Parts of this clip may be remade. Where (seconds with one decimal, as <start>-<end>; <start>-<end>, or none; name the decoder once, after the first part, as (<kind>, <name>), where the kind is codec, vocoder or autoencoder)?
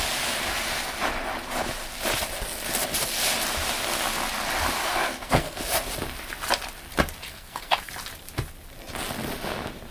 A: 4.8-5.6 (codec, SNAC); 7.3-7.9